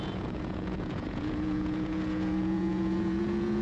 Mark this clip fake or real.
fake